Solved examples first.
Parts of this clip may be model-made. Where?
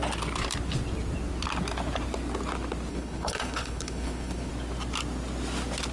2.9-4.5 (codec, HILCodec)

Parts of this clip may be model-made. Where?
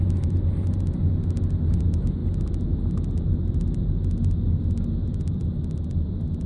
none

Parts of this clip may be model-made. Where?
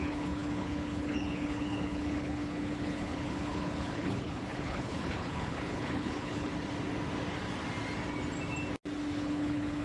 0.0-6.5 (codec, HILCodec); 9.1-9.8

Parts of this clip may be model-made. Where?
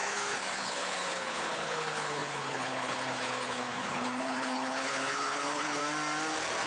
0.0-5.8 (codec, HILCodec)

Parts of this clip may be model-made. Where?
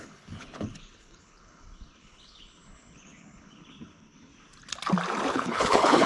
0.0-4.3 (codec, HILCodec); 5.3-6.1